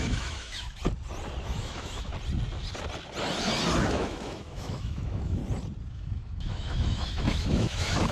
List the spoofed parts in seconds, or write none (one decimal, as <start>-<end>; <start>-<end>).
0.0-0.8; 1.4-2.1; 3.8-5.4; 5.9-8.1